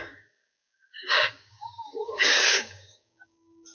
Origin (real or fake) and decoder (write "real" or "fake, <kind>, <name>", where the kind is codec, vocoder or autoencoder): fake, codec, DAC